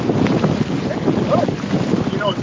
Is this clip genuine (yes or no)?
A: yes